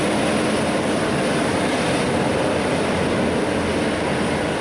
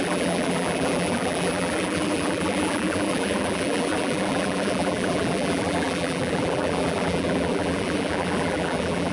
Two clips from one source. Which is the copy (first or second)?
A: second